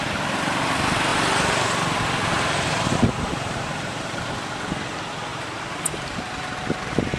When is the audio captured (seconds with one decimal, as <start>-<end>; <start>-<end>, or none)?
0.0-1.1; 4.5-5.3; 6.2-7.2

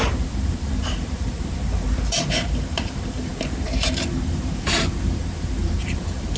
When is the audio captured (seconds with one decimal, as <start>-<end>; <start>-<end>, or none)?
none